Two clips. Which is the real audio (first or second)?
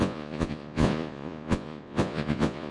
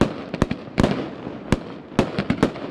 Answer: second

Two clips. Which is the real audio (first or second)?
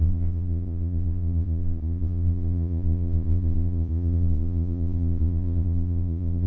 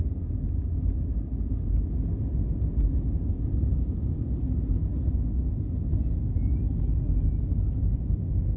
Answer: second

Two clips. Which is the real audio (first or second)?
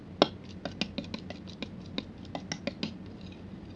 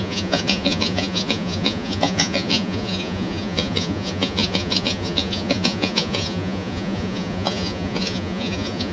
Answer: first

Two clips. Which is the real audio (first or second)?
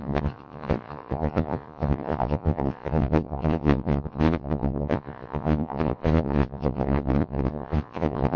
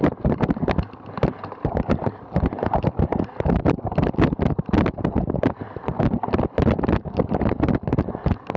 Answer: second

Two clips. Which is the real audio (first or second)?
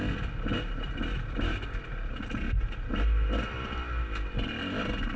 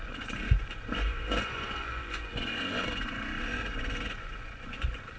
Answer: first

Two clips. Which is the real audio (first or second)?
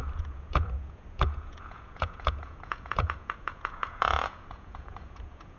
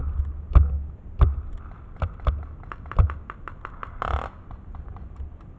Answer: second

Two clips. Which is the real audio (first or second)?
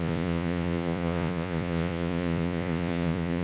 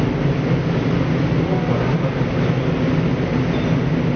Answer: second